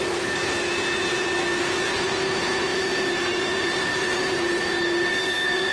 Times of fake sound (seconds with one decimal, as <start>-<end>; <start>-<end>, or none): none